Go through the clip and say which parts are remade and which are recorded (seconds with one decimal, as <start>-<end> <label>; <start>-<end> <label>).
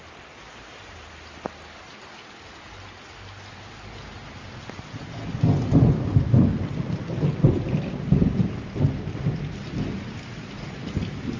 0.0-11.4 recorded